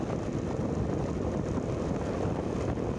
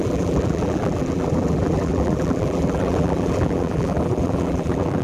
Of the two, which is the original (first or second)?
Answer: first